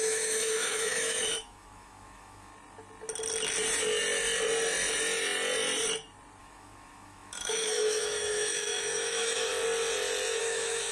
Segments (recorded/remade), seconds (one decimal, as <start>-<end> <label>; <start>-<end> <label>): 0.0-2.5 remade; 2.5-6.4 recorded; 6.4-9.5 remade; 9.5-10.4 recorded; 10.4-10.9 remade

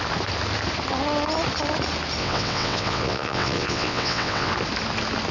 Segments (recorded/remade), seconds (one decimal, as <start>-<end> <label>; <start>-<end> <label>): 0.0-2.2 recorded; 2.2-4.5 remade; 4.5-5.3 recorded

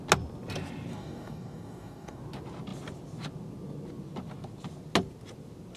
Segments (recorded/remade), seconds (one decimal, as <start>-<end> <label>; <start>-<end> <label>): 0.0-0.9 recorded; 0.9-2.2 remade; 2.2-5.8 recorded